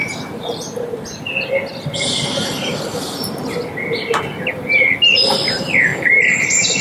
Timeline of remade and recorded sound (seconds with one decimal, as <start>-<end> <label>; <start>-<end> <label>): 0.0-5.9 recorded; 5.9-6.8 remade